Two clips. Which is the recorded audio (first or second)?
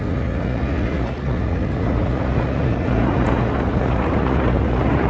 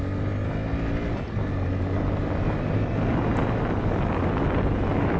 second